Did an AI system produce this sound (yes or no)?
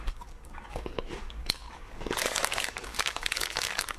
yes